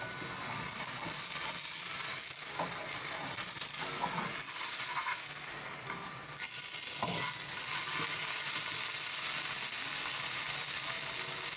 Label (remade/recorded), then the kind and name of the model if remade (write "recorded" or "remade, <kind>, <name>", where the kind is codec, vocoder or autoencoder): recorded